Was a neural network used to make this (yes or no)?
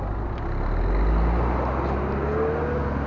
no